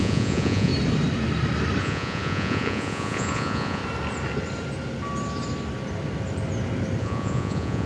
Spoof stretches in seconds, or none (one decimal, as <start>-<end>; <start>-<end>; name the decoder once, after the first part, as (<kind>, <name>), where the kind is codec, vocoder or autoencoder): 0.0-0.7 (vocoder, Vocos); 1.8-3.8; 7.0-7.9